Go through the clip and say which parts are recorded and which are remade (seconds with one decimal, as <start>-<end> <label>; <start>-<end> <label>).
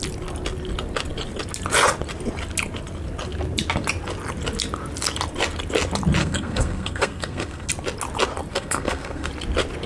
0.0-6.2 recorded; 6.2-7.7 remade; 7.7-8.5 recorded; 8.5-9.3 remade; 9.3-9.9 recorded